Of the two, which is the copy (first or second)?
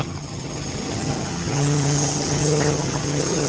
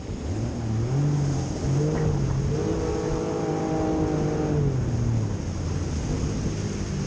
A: first